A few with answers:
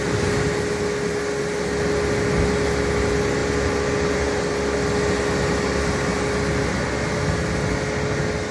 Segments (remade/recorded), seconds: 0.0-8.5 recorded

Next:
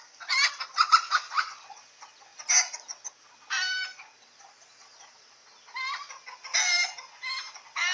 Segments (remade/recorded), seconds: 0.0-7.9 recorded

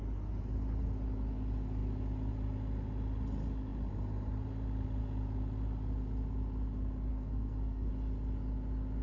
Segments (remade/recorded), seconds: 0.0-7.1 recorded; 7.1-7.9 remade; 7.9-9.0 recorded

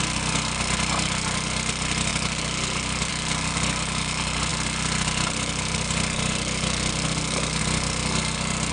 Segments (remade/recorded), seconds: 0.0-8.7 remade

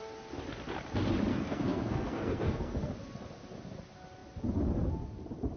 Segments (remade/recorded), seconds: 0.0-1.3 recorded; 1.3-2.9 remade; 2.9-5.6 recorded

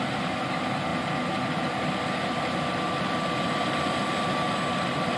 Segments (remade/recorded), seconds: 0.0-5.2 recorded

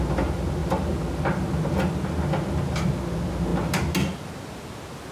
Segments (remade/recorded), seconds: 0.0-5.1 recorded

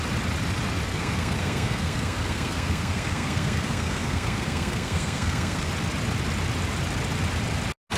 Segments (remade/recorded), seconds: 0.0-0.9 recorded; 0.9-5.7 remade; 5.7-8.0 recorded